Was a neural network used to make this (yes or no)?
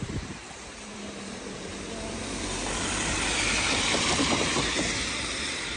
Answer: yes